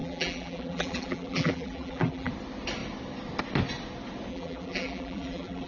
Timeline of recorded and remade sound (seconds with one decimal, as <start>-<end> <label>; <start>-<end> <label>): 0.0-2.3 remade; 2.3-4.3 recorded; 4.3-5.7 remade